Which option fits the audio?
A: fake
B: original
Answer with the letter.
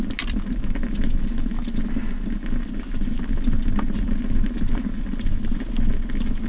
B